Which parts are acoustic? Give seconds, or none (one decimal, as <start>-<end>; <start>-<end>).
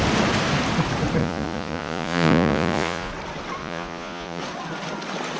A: 0.0-1.2; 3.1-3.6; 4.4-5.4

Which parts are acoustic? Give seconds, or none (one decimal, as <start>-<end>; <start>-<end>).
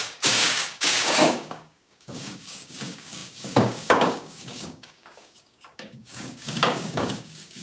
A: none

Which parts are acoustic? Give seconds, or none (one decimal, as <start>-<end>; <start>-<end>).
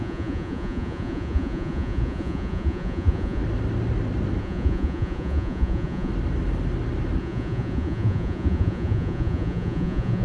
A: 3.4-4.4; 6.1-7.2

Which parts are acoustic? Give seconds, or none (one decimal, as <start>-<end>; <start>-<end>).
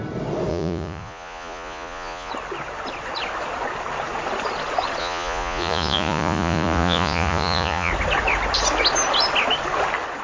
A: 0.0-0.5; 2.3-5.0; 7.9-10.2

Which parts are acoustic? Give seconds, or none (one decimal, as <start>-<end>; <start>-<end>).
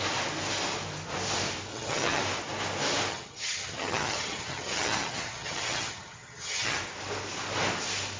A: 0.0-1.7; 2.2-3.1; 6.8-8.2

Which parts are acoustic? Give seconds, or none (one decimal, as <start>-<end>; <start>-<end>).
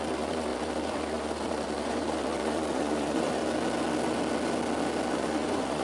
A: 3.4-5.1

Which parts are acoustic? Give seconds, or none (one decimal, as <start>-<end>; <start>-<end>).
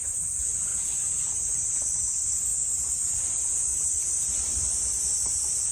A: 0.0-2.5; 3.1-3.7; 4.2-5.7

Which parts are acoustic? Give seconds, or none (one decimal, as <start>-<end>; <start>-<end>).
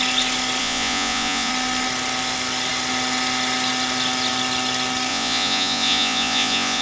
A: 0.0-0.6; 1.5-5.1